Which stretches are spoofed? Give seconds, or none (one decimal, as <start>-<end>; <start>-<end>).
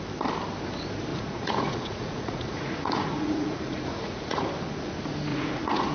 1.1-4.4; 5.3-5.9